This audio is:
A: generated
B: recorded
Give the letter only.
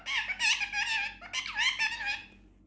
B